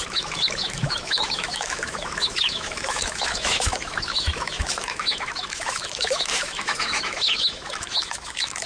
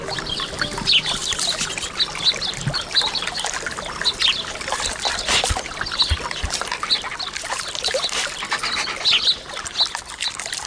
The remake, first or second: first